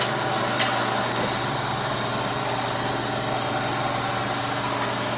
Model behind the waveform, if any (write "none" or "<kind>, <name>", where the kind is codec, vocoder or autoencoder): none